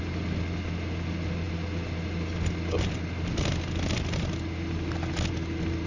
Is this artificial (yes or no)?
no